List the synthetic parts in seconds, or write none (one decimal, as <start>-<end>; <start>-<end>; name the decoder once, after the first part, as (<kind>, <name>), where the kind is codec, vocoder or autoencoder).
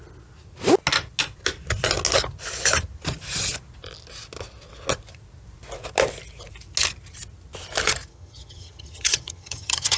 8.1-10.0 (vocoder, HiFi-GAN)